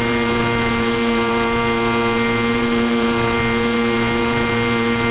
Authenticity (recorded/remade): remade